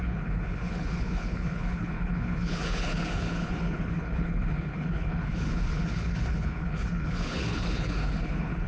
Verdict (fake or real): fake